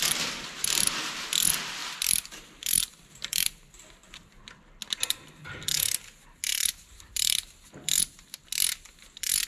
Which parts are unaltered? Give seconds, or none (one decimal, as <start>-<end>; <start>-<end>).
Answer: 0.0-1.8; 4.4-6.5; 8.0-9.5